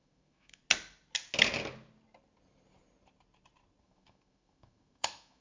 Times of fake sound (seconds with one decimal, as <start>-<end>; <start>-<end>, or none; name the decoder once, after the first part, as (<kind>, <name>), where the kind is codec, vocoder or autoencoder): 0.0-0.6 (autoencoder, DAC-VAE); 3.8-5.4